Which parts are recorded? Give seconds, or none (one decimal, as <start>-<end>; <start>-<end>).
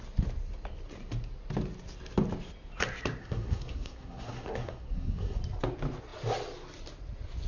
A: 0.0-3.2; 5.4-7.5